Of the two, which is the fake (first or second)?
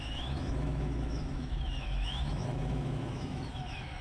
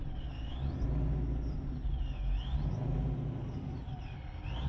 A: first